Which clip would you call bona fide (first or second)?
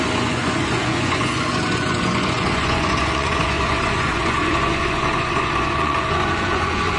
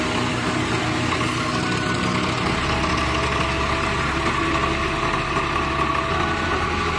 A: second